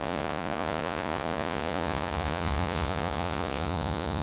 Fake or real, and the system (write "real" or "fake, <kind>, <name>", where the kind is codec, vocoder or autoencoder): fake, vocoder, Vocos